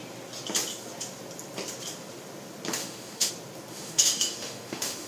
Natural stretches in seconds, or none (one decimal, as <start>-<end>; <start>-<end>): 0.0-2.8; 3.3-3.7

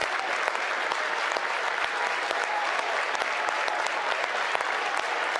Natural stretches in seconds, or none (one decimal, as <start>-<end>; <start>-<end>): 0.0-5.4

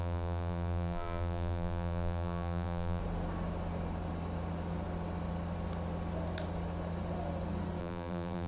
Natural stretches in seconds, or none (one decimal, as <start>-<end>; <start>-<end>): 3.0-7.8

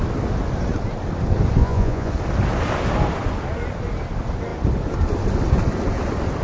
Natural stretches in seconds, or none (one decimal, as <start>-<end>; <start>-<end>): 0.0-1.6; 2.1-6.4

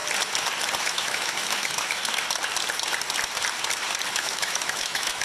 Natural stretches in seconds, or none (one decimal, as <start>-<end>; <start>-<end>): 0.0-0.8; 2.0-4.1

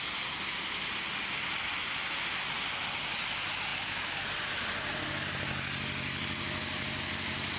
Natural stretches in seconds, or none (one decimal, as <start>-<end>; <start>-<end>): 0.0-7.6